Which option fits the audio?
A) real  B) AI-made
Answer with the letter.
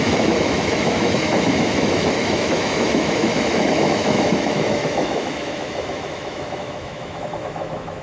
B